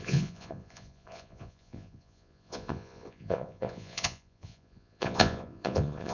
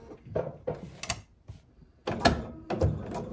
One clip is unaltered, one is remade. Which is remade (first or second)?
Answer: first